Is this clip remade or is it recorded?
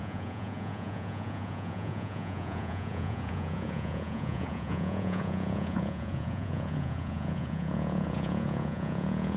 remade